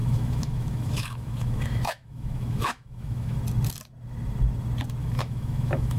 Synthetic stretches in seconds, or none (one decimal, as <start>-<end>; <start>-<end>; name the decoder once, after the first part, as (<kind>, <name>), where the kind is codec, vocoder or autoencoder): 0.0-3.4 (autoencoder, DAC-VAE); 5.0-6.0